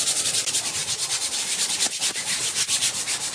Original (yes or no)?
yes